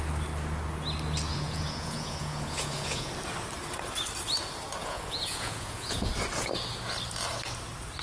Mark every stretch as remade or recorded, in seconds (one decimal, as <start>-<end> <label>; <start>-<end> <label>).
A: 0.0-1.3 recorded; 1.3-3.1 remade; 3.1-4.8 recorded; 4.8-6.1 remade; 6.1-8.0 recorded

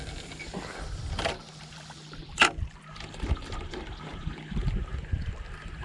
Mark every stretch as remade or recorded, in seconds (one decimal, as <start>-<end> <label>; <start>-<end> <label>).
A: 0.0-5.8 recorded

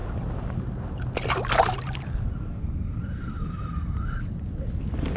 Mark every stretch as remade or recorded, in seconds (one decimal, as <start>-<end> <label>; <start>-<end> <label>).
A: 0.0-5.2 recorded

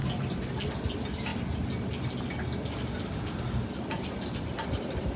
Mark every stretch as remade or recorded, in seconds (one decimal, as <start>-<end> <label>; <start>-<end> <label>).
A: 0.0-5.2 recorded

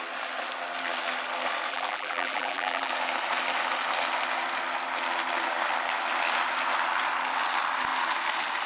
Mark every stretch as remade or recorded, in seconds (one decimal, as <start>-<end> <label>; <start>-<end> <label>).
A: 0.0-1.7 recorded; 1.7-2.9 remade; 2.9-8.7 recorded

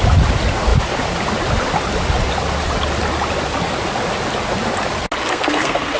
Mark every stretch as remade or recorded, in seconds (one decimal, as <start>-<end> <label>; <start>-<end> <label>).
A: 0.0-5.2 recorded; 5.2-6.0 remade

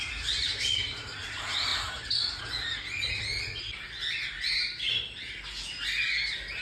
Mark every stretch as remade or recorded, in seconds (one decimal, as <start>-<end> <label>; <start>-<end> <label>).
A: 0.0-1.7 recorded; 1.7-2.4 remade; 2.4-6.6 recorded

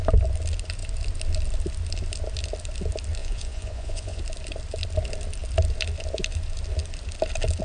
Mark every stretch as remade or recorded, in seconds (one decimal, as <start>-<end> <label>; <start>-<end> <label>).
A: 0.0-3.2 recorded; 3.2-4.2 remade; 4.2-7.6 recorded